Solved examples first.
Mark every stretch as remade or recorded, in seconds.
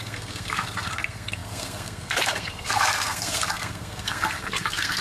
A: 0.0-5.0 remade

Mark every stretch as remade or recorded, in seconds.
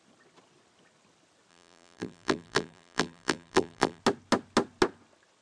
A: 0.0-1.5 recorded; 1.5-4.0 remade; 4.0-5.4 recorded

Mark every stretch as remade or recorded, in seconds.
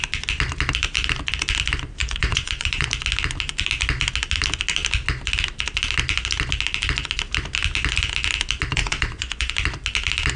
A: 0.0-2.0 recorded; 2.0-2.9 remade; 2.9-8.8 recorded; 8.8-9.5 remade; 9.5-10.4 recorded